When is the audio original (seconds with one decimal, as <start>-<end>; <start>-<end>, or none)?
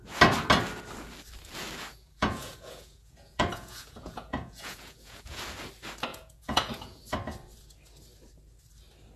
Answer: 0.0-1.9; 5.4-6.1; 7.0-9.2